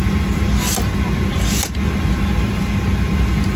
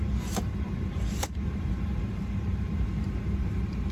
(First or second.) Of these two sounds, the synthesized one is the second